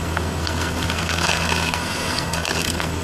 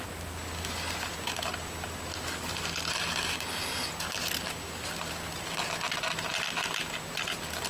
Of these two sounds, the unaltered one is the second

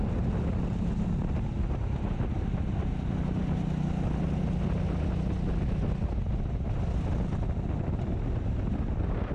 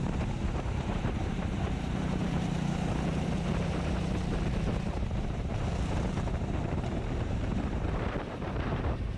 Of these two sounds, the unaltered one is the first